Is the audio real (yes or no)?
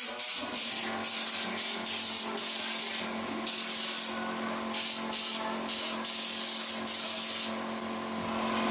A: yes